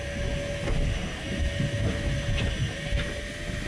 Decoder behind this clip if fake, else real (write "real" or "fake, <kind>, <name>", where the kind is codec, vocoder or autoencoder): real